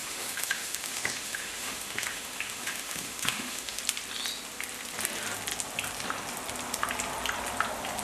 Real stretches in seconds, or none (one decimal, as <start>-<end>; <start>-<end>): 3.8-8.0